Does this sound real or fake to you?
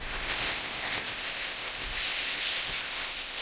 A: fake